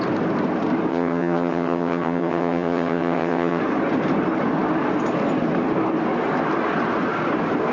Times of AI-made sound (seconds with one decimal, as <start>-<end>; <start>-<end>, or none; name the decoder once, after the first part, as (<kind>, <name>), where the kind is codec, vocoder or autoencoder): 0.9-3.6 (vocoder, HiFi-GAN)